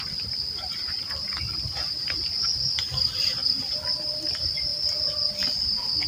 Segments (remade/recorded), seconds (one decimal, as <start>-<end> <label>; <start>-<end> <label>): 0.0-4.7 remade; 4.7-6.1 recorded